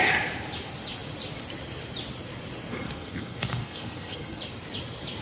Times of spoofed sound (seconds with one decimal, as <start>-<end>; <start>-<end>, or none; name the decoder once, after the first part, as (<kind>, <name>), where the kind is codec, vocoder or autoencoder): 2.7-4.4 (codec, SNAC)